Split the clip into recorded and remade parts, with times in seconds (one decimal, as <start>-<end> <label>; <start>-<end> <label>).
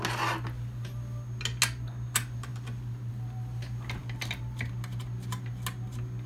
0.0-6.3 recorded